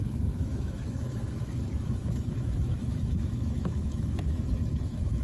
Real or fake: fake